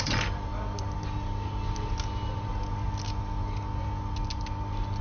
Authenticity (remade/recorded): recorded